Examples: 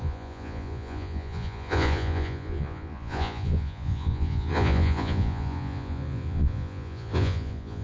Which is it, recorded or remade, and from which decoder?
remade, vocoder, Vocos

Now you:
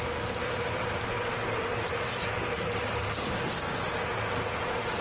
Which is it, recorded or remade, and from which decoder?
recorded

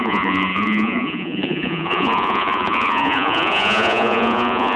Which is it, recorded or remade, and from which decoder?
remade, vocoder, Vocos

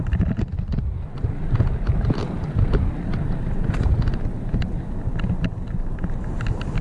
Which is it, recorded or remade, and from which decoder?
recorded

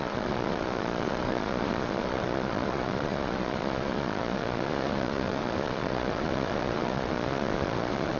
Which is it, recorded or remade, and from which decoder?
remade, vocoder, Vocos